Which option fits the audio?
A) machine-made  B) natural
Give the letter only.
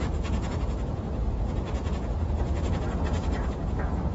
A